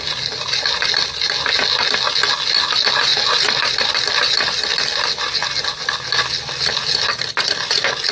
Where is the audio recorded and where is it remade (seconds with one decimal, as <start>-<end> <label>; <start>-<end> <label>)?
0.0-3.1 recorded; 3.1-5.4 remade; 5.4-8.1 recorded